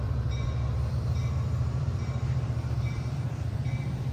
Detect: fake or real fake